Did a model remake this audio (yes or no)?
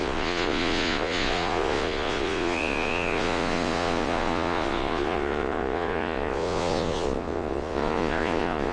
yes